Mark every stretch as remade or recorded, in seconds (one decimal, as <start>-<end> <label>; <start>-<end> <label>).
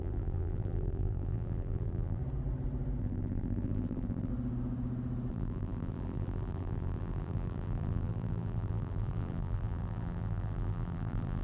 0.0-2.2 remade; 2.2-3.0 recorded; 3.0-4.3 remade; 4.3-5.3 recorded; 5.3-11.4 remade